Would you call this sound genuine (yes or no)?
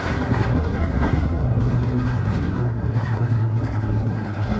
no